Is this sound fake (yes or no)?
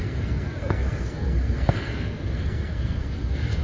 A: yes